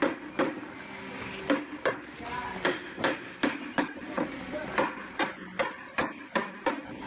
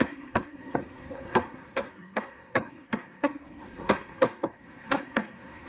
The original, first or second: first